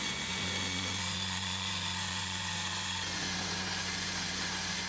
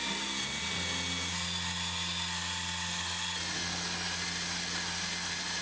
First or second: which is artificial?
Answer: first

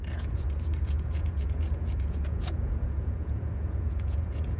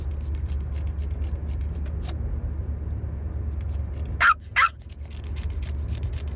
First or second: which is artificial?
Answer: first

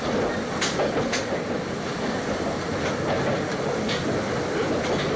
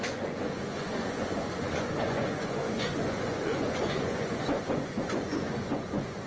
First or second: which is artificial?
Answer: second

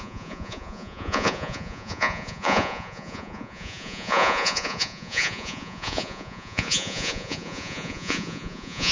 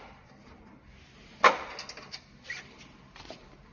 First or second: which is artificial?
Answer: first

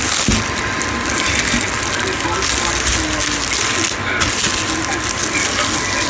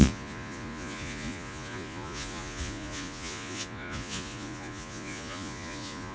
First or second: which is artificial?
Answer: second